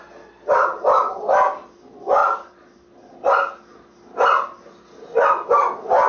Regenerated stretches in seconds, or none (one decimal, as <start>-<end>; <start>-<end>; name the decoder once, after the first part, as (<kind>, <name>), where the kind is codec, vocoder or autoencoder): 2.2-3.1 (vocoder, BigVGAN v2)